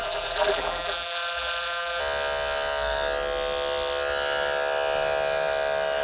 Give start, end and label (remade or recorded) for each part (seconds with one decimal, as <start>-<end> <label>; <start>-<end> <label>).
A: 0.0-2.0 remade; 2.0-6.0 recorded

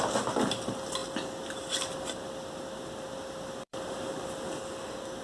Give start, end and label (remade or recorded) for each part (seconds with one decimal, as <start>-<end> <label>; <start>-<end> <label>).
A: 0.0-1.0 recorded; 1.0-4.1 remade; 4.1-5.2 recorded

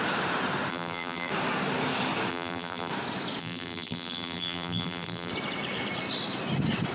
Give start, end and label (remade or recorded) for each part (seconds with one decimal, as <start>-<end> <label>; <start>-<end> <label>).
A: 0.0-0.7 recorded; 0.7-1.3 remade; 1.3-2.3 recorded; 2.3-2.9 remade; 2.9-3.4 recorded; 3.4-5.3 remade; 5.3-6.9 recorded

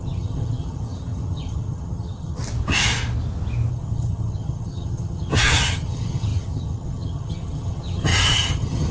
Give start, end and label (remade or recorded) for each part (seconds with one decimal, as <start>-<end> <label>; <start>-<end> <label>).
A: 0.0-2.4 remade; 2.4-3.7 recorded; 3.7-8.9 remade

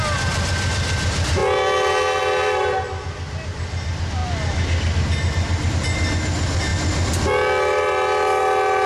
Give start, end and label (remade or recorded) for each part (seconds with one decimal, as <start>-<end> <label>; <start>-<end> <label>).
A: 0.0-8.9 recorded

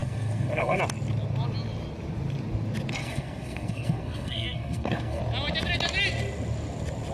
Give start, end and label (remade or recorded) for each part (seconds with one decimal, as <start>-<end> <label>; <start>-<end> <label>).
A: 0.0-0.8 remade; 0.8-3.0 recorded; 3.0-5.2 remade; 5.2-7.1 recorded